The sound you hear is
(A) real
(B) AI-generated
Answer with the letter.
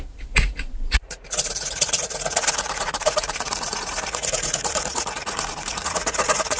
B